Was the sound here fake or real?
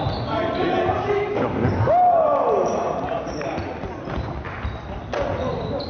real